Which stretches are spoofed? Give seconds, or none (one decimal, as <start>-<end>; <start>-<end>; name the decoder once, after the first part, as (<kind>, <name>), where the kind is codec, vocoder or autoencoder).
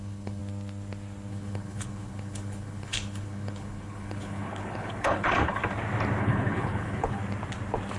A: 0.0-0.4 (codec, HILCodec); 1.3-5.6; 6.2-7.2